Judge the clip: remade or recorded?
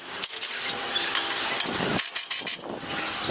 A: recorded